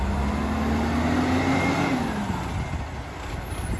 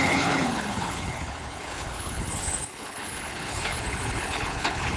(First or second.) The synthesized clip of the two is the second